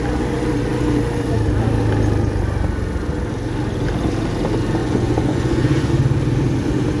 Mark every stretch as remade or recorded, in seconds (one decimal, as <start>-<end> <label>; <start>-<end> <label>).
0.0-4.8 recorded; 4.8-5.9 remade; 5.9-7.0 recorded